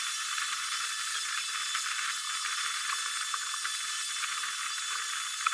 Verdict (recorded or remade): remade